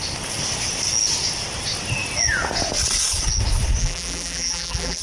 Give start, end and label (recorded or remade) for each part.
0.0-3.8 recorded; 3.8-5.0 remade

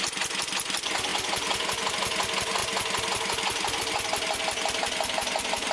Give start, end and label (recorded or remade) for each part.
0.0-5.7 recorded

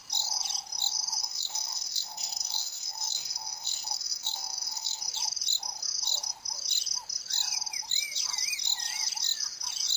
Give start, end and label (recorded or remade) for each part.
0.0-1.2 recorded; 1.2-5.0 remade; 5.0-10.0 recorded

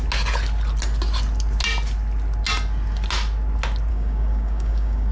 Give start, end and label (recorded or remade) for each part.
0.0-3.9 recorded; 3.9-5.1 remade